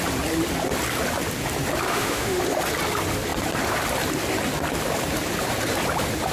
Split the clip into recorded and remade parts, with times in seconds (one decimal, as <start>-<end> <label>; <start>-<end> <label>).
0.0-1.9 recorded; 1.9-2.4 remade; 2.4-6.3 recorded